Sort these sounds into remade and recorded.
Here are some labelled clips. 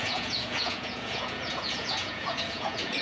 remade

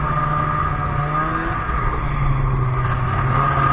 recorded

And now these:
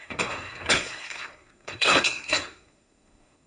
remade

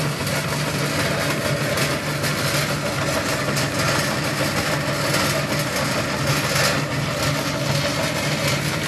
recorded